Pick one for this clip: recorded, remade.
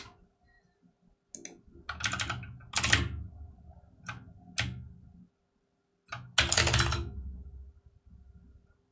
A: recorded